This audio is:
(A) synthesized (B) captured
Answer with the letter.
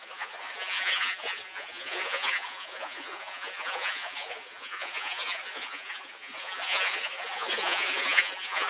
A